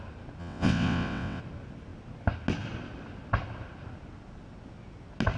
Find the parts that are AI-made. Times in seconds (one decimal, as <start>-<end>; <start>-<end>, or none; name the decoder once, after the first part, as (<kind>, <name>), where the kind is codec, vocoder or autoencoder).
0.4-1.4 (vocoder, WaveNeXt)